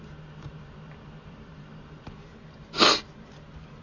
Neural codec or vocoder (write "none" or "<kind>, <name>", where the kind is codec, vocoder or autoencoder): vocoder, BigVGAN v2